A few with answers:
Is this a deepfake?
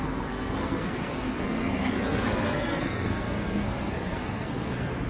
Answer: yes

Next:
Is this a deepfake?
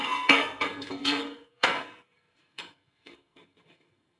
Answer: yes